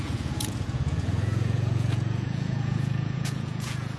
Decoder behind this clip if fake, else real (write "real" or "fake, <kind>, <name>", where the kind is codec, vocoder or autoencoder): fake, vocoder, Vocos